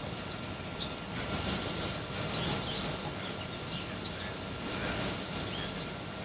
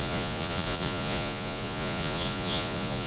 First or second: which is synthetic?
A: second